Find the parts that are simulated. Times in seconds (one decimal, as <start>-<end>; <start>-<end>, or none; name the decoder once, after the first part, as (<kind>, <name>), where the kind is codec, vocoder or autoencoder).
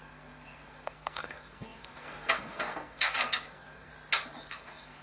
0.0-3.9 (codec, SNAC); 4.5-5.0